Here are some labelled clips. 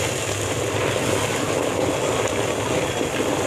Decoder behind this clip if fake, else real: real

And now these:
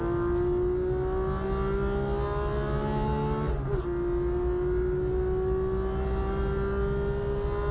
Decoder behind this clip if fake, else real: real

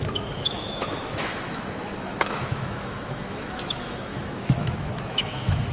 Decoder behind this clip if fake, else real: fake, autoencoder, DAC-VAE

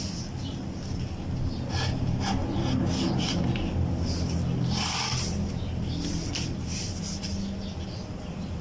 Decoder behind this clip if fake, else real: real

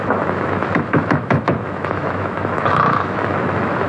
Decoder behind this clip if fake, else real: fake, autoencoder, DAC-VAE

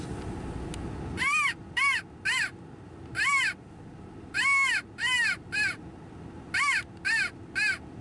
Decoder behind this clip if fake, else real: real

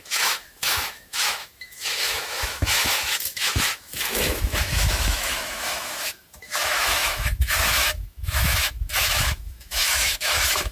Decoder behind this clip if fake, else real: fake, autoencoder, DAC-VAE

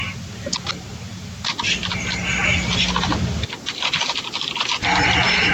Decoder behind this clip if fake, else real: real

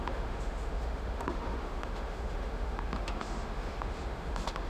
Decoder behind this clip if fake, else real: fake, autoencoder, DAC-VAE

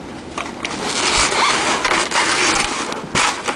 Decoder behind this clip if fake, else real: real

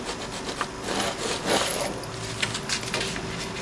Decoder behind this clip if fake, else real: real